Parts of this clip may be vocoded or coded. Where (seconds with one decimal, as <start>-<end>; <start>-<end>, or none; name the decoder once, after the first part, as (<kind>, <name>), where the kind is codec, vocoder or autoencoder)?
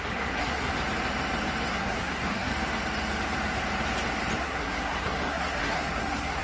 0.0-0.7 (codec, SNAC); 1.7-2.5; 4.4-6.4